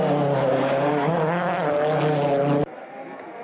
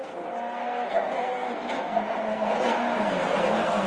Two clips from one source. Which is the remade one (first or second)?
second